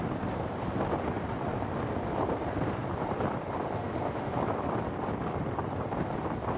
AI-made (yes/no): no